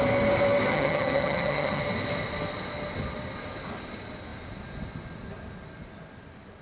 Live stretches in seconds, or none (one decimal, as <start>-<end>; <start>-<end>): 0.0-0.7; 1.8-6.6